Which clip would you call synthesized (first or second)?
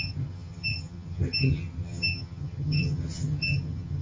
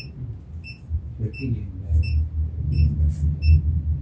first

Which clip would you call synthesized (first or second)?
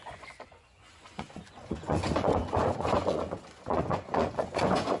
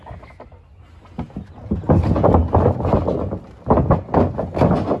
first